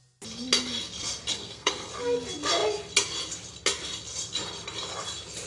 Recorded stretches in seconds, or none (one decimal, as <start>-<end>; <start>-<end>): 0.0-1.3; 1.9-5.5